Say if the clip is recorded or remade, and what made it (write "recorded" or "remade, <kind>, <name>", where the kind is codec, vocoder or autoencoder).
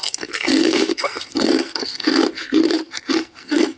remade, codec, SNAC